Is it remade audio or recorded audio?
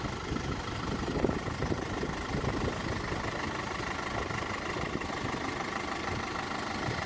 recorded